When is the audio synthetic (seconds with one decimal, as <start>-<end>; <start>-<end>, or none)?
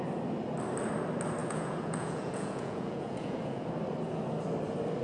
1.4-3.7